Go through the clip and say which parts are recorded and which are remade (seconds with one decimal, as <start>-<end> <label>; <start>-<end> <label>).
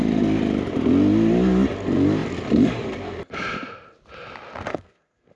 0.0-4.7 recorded; 4.7-5.4 remade